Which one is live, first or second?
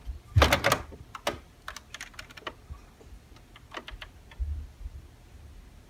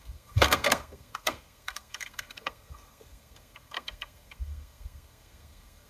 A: first